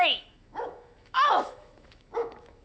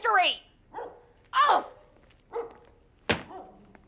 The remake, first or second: first